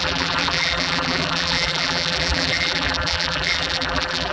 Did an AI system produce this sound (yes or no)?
yes